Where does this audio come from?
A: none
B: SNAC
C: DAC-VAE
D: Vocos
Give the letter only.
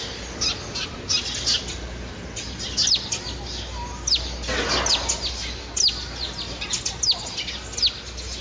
A